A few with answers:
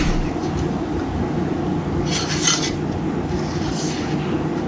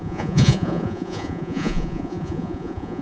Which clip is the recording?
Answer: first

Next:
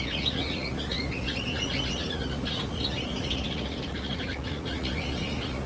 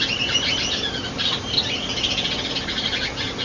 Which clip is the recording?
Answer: second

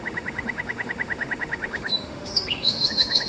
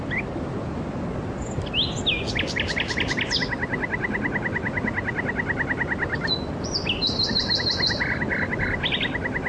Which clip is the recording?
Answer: second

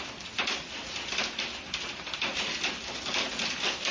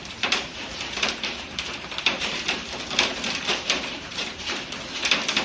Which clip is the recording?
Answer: first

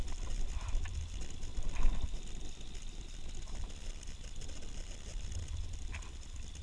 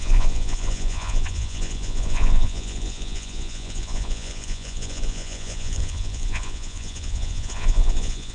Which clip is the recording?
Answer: first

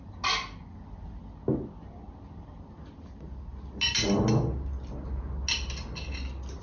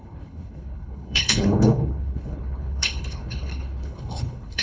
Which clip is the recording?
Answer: first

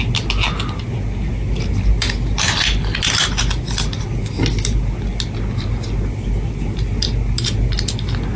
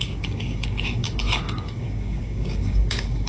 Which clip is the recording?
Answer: first